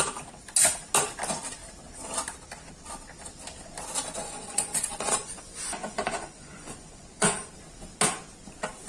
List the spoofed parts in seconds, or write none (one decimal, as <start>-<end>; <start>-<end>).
4.2-7.5